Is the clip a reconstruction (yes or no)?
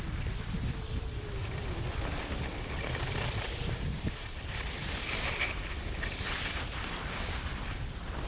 yes